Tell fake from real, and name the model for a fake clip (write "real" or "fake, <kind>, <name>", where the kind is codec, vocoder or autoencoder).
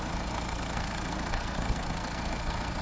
fake, codec, SNAC